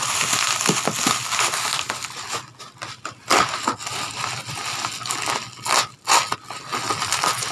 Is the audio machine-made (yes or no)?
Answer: no